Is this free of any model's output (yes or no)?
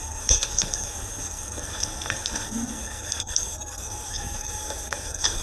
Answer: no